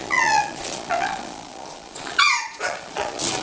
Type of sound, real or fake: fake